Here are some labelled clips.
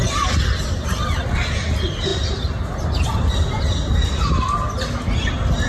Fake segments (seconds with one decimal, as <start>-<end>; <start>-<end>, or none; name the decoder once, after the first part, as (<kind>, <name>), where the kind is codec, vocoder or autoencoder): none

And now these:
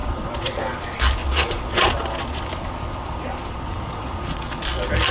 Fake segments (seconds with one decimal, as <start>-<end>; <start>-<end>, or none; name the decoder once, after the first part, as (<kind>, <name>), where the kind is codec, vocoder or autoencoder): 0.0-0.6 (vocoder, Vocos); 1.2-2.4; 3.4-4.6

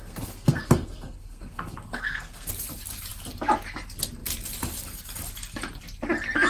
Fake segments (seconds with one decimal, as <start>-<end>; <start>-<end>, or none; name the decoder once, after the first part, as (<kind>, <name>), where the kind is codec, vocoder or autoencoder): 0.0-2.5 (codec, SNAC)

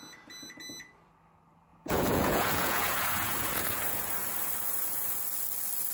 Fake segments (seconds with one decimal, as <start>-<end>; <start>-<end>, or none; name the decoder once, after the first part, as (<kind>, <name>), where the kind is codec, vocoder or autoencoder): 1.7-5.2 (vocoder, Vocos)

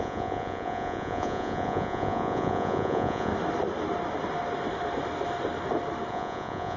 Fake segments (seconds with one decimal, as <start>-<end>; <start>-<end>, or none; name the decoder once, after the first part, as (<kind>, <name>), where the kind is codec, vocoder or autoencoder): 0.0-3.3 (vocoder, Vocos); 6.1-6.8

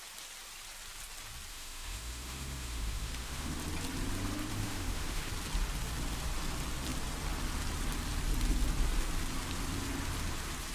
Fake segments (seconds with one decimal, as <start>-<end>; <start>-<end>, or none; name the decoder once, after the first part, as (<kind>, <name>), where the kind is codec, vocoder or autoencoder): 1.5-3.6 (autoencoder, DAC-VAE); 4.5-5.3

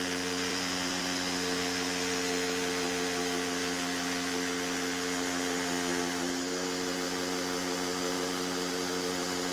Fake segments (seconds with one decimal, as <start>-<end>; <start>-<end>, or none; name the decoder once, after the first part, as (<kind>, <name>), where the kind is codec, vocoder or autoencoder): 0.5-1.0 (vocoder, BigVGAN v2)